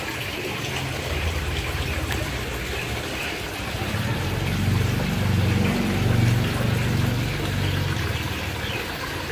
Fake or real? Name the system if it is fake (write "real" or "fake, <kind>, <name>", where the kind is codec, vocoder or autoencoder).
real